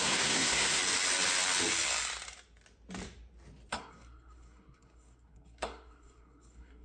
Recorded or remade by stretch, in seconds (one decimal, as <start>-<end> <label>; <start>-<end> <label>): 0.0-0.8 remade; 0.8-3.7 recorded; 3.7-6.8 remade